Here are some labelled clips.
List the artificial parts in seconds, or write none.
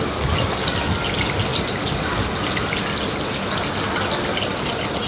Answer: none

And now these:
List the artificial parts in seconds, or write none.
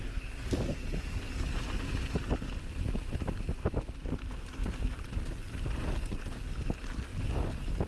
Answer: none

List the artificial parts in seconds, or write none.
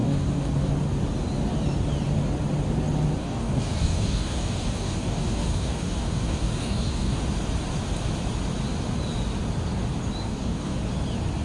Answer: 0.0-0.7 (codec, DAC); 3.2-7.2; 10.3-10.8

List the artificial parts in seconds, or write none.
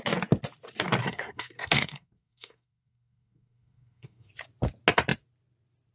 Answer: 1.0-4.3 (codec, SNAC)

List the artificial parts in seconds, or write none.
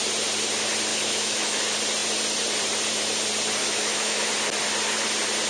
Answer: 0.9-1.6 (autoencoder, DAC-VAE); 3.6-4.3